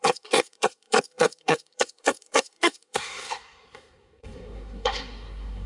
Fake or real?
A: fake